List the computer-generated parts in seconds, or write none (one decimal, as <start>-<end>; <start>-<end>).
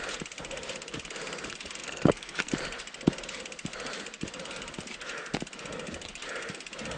1.8-2.5